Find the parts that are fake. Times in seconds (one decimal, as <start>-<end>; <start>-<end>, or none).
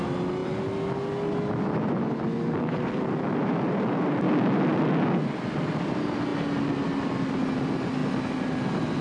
none